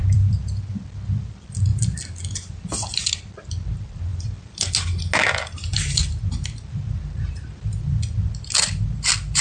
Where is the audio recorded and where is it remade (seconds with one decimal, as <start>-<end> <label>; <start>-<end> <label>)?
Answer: 0.0-1.7 remade; 1.7-3.2 recorded; 3.2-4.1 remade; 4.1-7.3 recorded; 7.3-9.4 remade